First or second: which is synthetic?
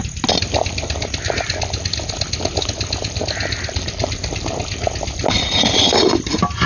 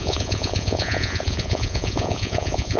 second